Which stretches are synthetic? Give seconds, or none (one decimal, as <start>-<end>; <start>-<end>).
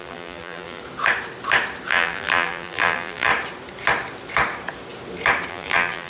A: 0.0-0.8; 1.9-3.3; 5.5-6.1